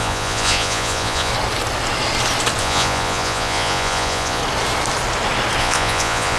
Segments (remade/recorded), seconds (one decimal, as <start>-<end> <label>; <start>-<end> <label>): 0.0-1.3 remade; 1.3-2.6 recorded; 2.6-4.4 remade; 4.4-5.6 recorded; 5.6-6.4 remade